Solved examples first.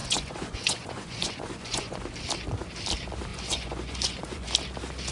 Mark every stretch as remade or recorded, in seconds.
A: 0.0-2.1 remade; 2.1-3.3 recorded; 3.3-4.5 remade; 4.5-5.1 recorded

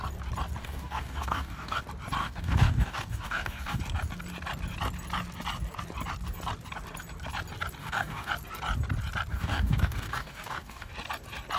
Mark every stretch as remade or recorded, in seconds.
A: 0.0-0.6 recorded; 0.6-1.8 remade; 1.8-2.2 recorded; 2.2-3.8 remade; 3.8-7.8 recorded; 7.8-8.3 remade; 8.3-9.3 recorded; 9.3-10.9 remade; 10.9-11.6 recorded

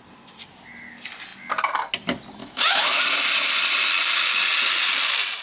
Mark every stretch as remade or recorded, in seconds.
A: 0.0-2.4 recorded; 2.4-3.0 remade; 3.0-5.4 recorded

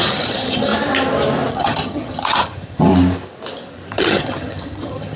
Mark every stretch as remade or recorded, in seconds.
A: 0.0-0.7 remade; 0.7-1.5 recorded; 1.5-2.9 remade; 2.9-3.9 recorded; 3.9-5.2 remade

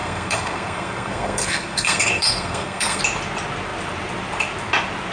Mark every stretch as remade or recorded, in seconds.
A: 0.0-3.0 remade; 3.0-5.1 recorded